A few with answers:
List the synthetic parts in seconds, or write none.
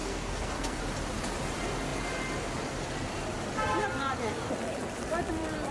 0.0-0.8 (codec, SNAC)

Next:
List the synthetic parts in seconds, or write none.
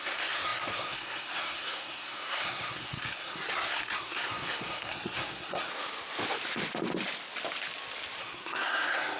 0.0-5.7 (codec, SNAC); 8.2-9.2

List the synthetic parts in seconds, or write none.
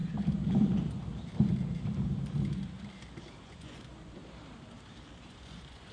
3.4-4.2 (vocoder, Vocos); 5.3-5.9